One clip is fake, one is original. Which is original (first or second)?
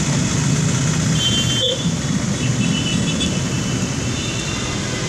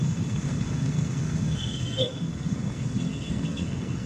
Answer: first